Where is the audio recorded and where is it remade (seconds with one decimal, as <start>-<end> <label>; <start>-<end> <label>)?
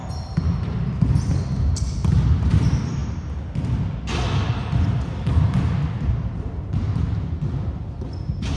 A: 0.0-8.6 recorded